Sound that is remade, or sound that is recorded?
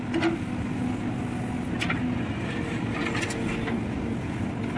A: recorded